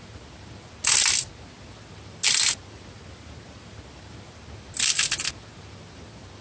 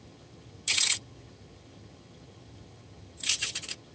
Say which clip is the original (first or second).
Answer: first